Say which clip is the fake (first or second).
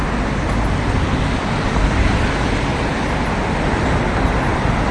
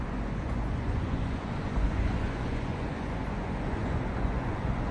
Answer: second